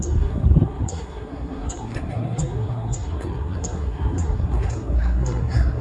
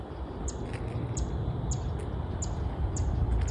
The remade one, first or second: first